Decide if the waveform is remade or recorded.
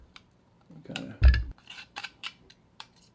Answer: remade